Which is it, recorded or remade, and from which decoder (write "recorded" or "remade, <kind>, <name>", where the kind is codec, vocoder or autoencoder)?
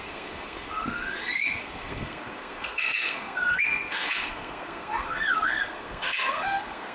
remade, codec, SNAC